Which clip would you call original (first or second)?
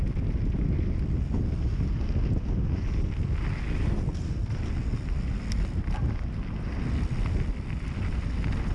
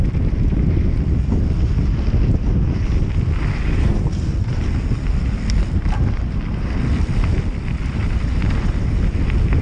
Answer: first